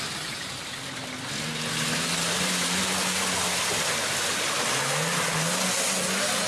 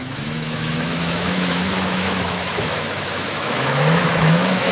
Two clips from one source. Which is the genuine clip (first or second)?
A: first